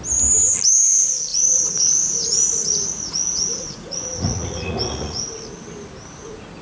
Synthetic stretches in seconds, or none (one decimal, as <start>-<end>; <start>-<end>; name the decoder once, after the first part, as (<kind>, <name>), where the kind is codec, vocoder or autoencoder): 1.3-5.3 (vocoder, Vocos)